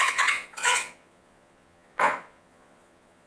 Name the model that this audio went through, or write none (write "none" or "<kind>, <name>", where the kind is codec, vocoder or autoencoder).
vocoder, Vocos